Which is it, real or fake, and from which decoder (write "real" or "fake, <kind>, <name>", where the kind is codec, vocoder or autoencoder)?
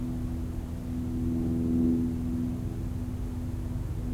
real